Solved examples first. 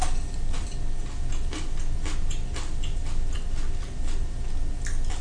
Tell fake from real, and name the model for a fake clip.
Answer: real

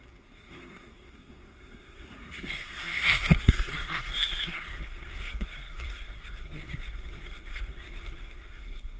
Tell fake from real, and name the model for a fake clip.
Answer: fake, codec, SNAC